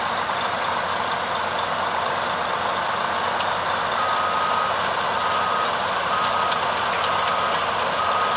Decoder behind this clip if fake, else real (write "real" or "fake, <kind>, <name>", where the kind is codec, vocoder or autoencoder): real